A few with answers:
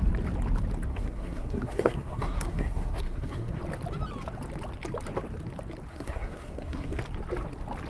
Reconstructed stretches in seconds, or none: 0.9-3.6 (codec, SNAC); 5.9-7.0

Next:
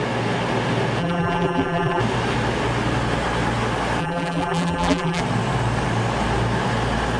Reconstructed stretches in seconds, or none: 1.0-2.0 (vocoder, BigVGAN v2); 4.0-5.2

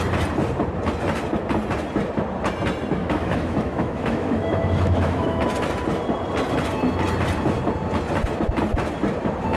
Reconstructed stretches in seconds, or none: 3.0-5.4 (autoencoder, DAC-VAE)

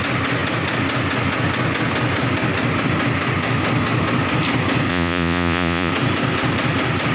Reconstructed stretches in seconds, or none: 4.9-5.9 (vocoder, Vocos)